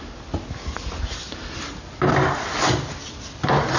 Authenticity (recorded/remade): recorded